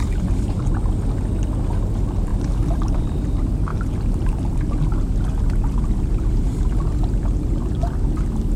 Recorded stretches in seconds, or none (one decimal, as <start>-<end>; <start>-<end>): 0.0-2.3; 3.3-8.6